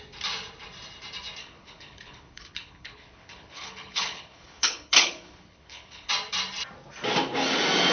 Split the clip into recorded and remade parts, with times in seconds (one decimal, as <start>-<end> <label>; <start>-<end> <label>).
0.0-1.4 recorded; 1.4-6.1 remade; 6.1-7.9 recorded